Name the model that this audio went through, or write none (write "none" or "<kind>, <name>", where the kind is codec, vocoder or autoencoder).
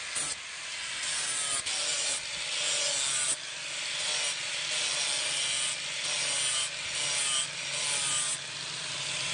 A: none